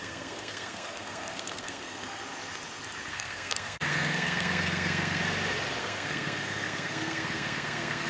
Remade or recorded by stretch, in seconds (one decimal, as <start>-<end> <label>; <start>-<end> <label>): 0.0-2.2 remade; 2.2-3.1 recorded; 3.1-5.2 remade; 5.2-5.8 recorded; 5.8-8.1 remade